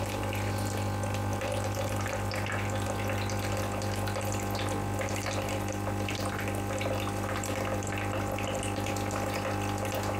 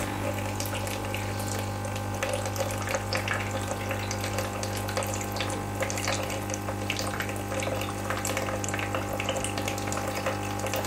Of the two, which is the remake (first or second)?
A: first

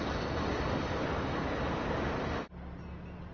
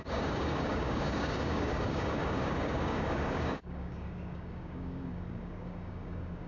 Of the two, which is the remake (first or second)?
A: second